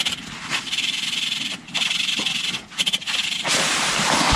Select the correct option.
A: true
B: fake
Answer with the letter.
B